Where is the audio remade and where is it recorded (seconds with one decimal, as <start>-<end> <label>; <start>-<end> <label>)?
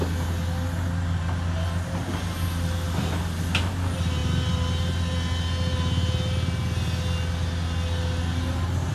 0.0-8.9 recorded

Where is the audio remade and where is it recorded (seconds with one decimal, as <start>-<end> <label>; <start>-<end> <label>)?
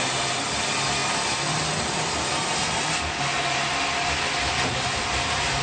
0.0-5.6 recorded